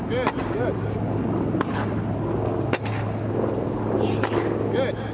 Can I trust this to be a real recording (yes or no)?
yes